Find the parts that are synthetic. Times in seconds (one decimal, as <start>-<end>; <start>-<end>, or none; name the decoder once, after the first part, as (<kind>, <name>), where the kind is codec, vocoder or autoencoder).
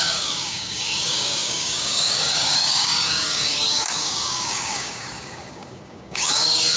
0.0-6.8 (codec, DAC)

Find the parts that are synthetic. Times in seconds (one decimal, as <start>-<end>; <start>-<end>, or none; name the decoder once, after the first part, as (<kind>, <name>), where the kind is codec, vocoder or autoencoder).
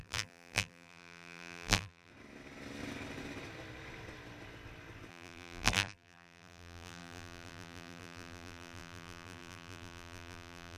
0.0-2.1 (vocoder, BigVGAN v2); 5.1-10.8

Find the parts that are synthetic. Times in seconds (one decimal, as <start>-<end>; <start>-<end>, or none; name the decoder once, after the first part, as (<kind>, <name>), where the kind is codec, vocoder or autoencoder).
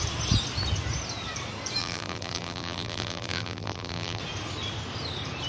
1.8-4.2 (vocoder, BigVGAN v2)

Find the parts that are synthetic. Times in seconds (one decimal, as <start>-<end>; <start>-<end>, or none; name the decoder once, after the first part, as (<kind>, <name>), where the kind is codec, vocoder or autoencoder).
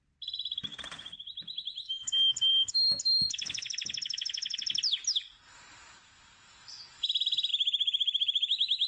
none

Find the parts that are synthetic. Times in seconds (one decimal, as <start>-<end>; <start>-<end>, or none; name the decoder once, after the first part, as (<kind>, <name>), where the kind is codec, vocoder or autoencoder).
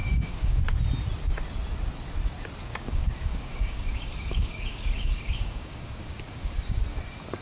0.0-0.6 (codec, DAC); 2.7-6.8